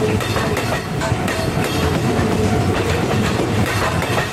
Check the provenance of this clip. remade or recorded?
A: remade